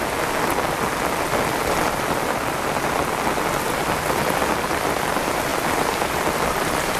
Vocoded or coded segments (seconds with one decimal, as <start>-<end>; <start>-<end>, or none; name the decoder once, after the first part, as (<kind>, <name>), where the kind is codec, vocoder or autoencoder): 5.5-6.6 (vocoder, BigVGAN v2)